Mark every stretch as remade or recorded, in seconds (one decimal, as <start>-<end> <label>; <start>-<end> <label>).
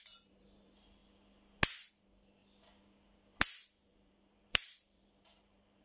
0.0-1.0 remade; 1.0-1.9 recorded; 1.9-2.4 remade; 2.4-3.9 recorded; 3.9-5.8 remade